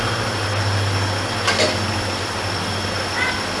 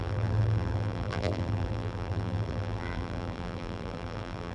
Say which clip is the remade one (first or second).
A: second